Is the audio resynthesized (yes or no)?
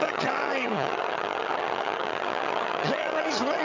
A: yes